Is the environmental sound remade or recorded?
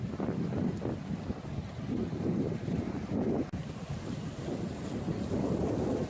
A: recorded